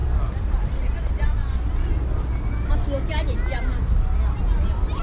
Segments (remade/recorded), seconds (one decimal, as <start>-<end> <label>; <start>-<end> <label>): 0.0-5.0 recorded